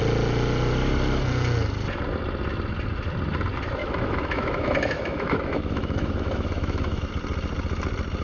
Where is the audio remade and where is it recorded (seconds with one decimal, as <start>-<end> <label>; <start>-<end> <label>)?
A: 0.0-3.8 recorded; 3.8-7.1 remade; 7.1-8.2 recorded